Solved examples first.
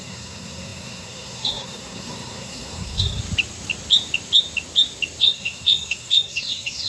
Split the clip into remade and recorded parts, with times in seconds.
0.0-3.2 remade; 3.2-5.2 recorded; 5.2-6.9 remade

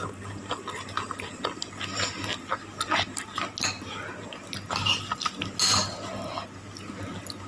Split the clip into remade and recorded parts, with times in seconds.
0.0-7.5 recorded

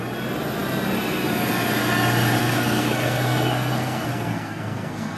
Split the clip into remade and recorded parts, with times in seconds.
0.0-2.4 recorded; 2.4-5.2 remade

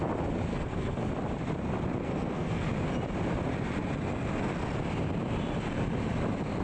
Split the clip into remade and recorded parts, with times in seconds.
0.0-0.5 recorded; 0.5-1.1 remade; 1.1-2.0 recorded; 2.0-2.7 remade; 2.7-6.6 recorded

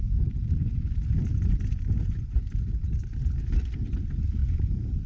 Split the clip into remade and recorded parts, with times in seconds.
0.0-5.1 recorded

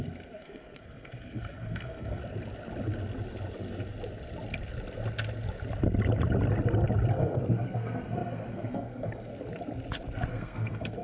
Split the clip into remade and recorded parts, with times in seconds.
0.0-2.2 remade; 2.2-7.1 recorded; 7.1-9.3 remade; 9.3-10.3 recorded; 10.3-11.0 remade

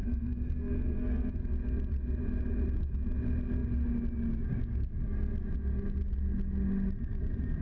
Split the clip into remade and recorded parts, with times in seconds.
0.0-1.3 remade; 1.3-7.6 recorded

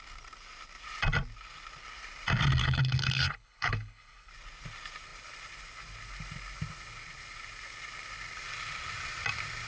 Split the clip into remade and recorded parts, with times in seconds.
0.0-2.6 recorded; 2.6-4.3 remade; 4.3-9.7 recorded